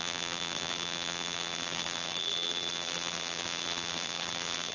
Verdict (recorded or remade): remade